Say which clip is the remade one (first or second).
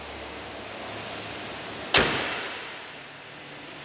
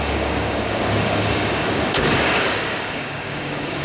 second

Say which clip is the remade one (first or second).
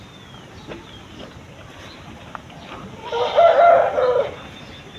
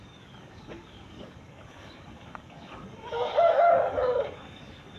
second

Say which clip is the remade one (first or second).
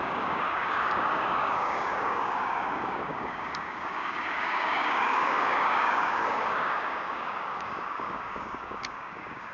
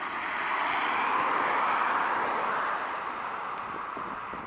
first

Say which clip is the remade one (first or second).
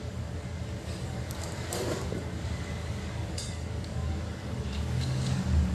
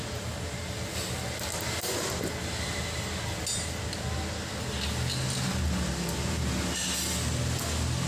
first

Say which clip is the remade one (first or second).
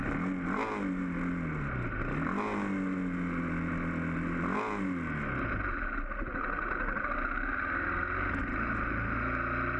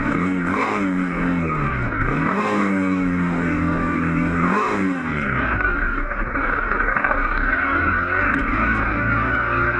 second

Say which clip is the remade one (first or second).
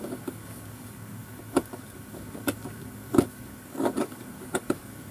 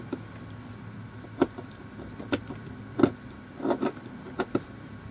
first